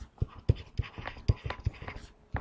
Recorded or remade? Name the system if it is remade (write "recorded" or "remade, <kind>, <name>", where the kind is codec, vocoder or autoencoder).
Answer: recorded